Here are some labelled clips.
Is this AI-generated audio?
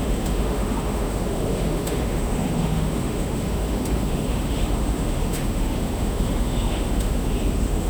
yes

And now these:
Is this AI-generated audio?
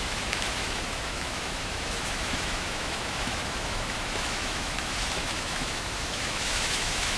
yes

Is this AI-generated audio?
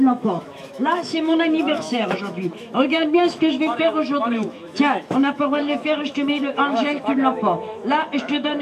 yes